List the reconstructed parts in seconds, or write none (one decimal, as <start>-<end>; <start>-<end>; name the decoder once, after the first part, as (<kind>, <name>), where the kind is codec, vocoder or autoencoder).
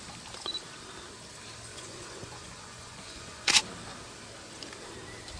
1.7-3.6 (vocoder, Vocos)